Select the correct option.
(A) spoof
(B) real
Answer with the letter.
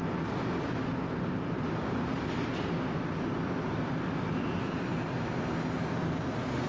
B